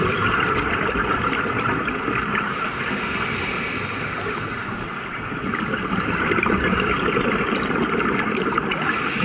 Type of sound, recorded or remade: recorded